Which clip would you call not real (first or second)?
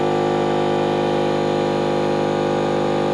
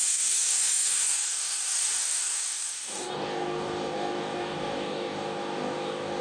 second